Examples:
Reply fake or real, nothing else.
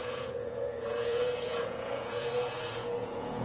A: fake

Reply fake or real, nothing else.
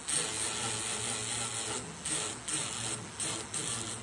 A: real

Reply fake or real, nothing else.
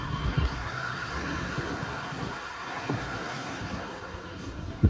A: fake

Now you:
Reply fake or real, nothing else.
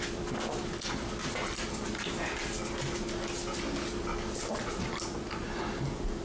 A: real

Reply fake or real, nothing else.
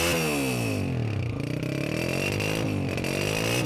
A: real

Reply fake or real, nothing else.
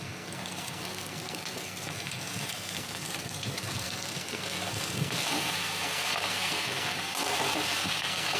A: fake